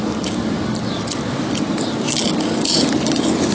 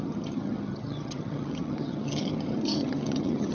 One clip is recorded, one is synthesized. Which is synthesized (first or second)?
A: second